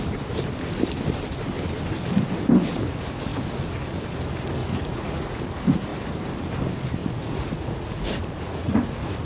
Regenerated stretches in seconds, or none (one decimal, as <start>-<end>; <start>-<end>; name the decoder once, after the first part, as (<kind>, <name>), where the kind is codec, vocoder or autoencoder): 4.6-5.4 (vocoder, Vocos); 7.0-9.2